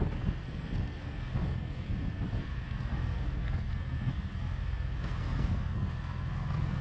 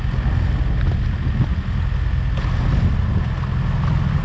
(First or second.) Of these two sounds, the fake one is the first